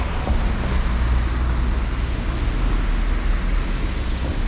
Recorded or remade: recorded